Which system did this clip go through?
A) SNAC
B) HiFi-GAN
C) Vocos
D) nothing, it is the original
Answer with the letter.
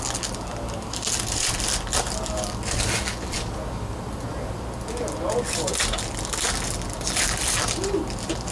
D